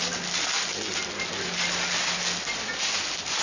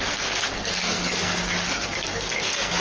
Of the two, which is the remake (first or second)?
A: second